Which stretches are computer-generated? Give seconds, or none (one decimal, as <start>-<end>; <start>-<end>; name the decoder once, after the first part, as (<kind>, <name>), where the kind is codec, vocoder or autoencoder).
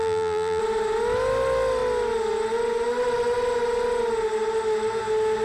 0.0-0.6 (vocoder, BigVGAN v2)